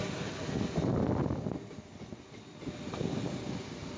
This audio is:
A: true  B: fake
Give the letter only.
A